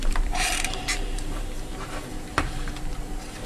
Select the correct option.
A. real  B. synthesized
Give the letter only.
B